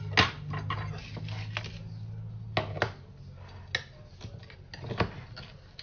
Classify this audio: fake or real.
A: real